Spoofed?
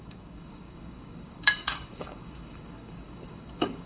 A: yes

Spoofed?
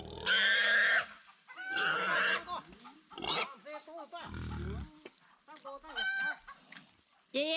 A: no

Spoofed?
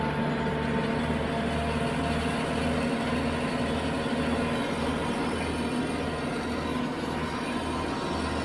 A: no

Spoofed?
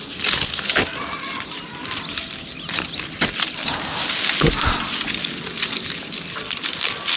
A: no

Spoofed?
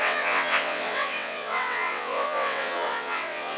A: yes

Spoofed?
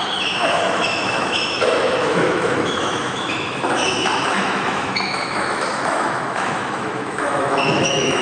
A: yes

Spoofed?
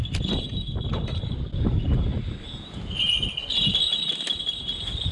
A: no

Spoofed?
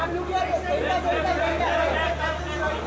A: no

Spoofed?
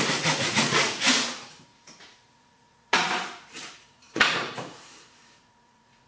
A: yes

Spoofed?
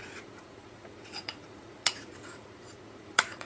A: yes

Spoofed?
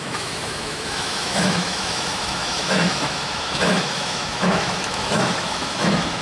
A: yes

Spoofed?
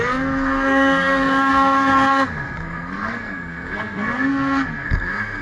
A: yes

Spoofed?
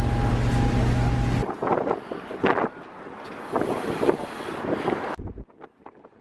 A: no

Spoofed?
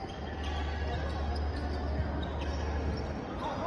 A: no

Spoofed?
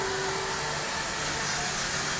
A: no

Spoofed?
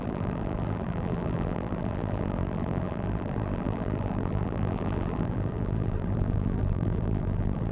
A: yes